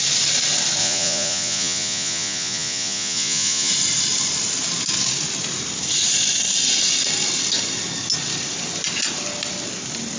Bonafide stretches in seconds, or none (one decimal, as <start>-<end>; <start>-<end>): 0.0-0.8; 3.7-10.2